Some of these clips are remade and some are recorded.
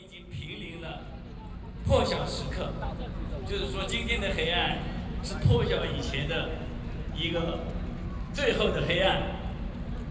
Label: recorded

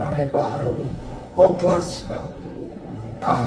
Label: remade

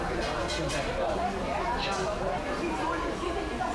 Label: recorded